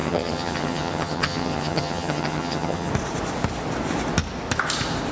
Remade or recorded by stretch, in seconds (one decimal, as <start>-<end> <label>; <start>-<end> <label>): 0.0-2.9 remade; 2.9-5.1 recorded